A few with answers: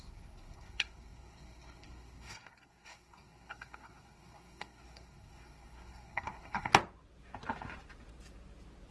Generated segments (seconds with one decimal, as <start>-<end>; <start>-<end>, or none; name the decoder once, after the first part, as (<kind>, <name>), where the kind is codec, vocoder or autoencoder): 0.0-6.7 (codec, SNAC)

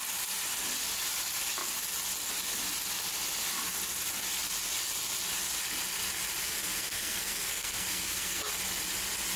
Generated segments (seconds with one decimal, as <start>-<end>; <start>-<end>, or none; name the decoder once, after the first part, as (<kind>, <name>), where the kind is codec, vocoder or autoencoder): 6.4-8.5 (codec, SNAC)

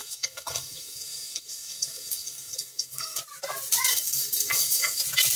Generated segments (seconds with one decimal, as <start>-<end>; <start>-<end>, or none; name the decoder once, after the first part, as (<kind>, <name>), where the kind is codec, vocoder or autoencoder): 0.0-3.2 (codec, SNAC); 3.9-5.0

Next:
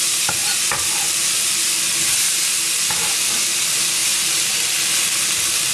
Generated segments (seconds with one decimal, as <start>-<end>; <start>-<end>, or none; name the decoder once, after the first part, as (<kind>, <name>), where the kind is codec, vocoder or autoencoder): none

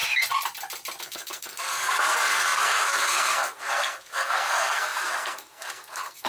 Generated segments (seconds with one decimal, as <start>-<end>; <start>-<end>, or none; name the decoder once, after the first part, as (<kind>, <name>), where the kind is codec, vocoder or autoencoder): 1.0-6.3 (codec, SNAC)

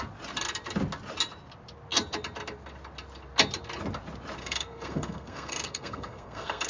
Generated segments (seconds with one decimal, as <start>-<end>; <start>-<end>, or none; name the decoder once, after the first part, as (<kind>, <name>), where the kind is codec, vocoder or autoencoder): 4.4-6.7 (codec, SNAC)

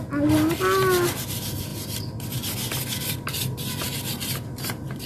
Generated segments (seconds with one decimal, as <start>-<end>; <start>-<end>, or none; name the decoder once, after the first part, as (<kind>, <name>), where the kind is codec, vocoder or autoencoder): none

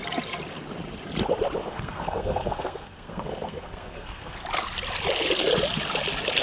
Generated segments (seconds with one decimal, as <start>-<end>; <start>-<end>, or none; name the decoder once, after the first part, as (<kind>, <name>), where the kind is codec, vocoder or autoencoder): 1.6-4.4 (codec, SNAC)